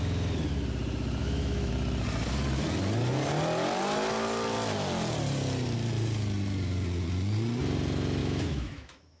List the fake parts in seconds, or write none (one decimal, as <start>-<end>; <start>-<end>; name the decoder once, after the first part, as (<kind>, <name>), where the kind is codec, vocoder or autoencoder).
1.2-1.7 (autoencoder, DAC-VAE); 8.2-9.2